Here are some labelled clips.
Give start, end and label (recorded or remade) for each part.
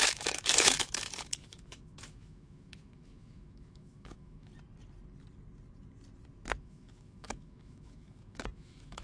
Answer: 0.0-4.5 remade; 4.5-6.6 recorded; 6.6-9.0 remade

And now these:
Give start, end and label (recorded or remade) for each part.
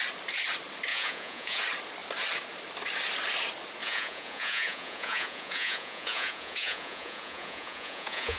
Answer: 0.0-0.9 recorded; 0.9-1.6 remade; 1.6-3.8 recorded; 3.8-8.4 remade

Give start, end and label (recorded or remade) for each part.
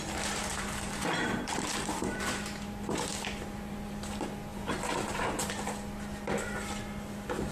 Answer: 0.0-0.5 recorded; 0.5-2.2 remade; 2.2-4.5 recorded; 4.5-5.5 remade; 5.5-7.5 recorded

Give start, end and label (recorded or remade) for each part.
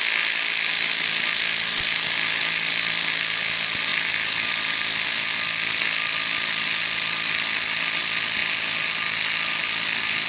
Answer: 0.0-10.3 recorded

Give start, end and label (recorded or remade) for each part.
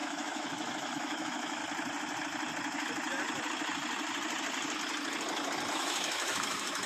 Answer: 0.0-1.6 remade; 1.6-5.7 recorded; 5.7-6.9 remade